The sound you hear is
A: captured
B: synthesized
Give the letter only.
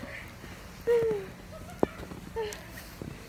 A